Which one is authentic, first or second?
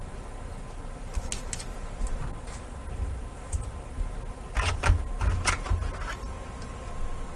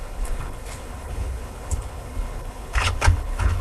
first